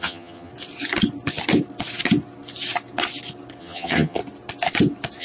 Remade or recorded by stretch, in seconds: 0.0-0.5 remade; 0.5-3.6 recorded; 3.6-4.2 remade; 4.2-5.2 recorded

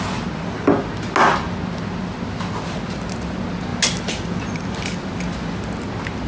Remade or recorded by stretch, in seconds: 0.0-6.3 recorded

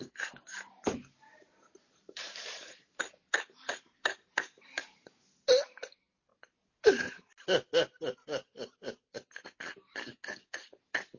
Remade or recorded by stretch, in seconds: 0.0-1.3 recorded; 1.3-3.1 remade; 3.1-11.2 recorded

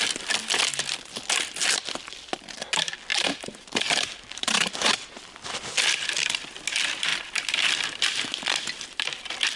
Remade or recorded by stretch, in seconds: 0.0-3.1 recorded; 3.1-4.7 remade; 4.7-9.6 recorded

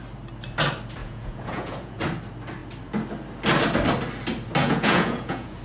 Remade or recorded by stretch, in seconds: 0.0-1.0 recorded; 1.0-2.0 remade; 2.0-4.6 recorded; 4.6-5.6 remade